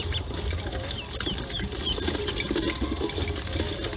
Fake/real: real